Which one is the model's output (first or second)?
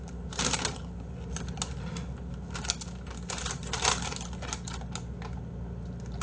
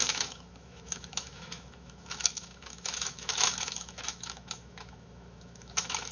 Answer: second